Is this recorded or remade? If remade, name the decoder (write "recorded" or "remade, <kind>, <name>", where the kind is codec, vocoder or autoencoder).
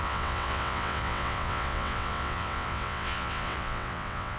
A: remade, vocoder, WaveNeXt